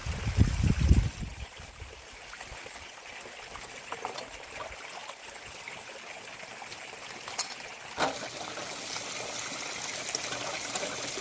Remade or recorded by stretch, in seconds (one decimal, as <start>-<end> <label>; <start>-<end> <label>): 0.0-11.2 recorded